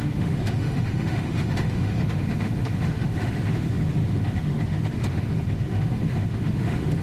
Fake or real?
fake